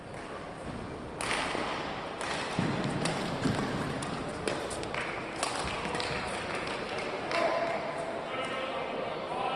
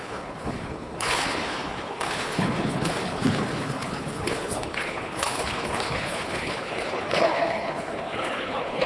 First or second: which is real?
first